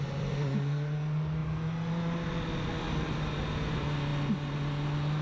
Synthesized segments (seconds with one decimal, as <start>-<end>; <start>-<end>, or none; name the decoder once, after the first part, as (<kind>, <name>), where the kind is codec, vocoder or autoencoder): none